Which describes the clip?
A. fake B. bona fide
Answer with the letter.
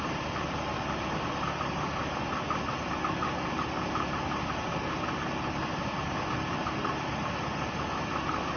B